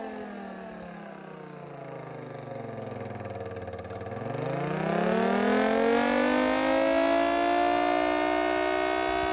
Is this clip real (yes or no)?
yes